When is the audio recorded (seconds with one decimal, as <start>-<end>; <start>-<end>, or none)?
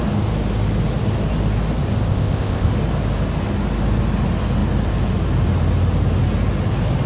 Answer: 0.0-2.1; 2.7-7.1